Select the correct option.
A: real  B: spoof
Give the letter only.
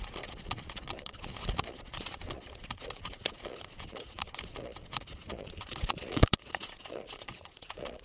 B